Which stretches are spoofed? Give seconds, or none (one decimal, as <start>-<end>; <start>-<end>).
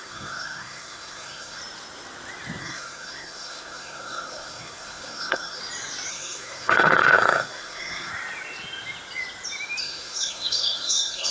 0.0-1.6; 2.6-5.6; 6.1-8.1; 9.8-11.3